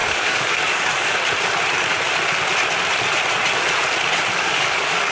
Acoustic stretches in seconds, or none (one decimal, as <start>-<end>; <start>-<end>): 1.2-4.3